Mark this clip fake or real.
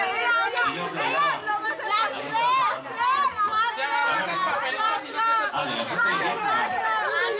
real